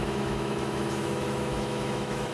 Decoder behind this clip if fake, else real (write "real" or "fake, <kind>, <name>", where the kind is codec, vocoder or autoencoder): fake, autoencoder, DAC-VAE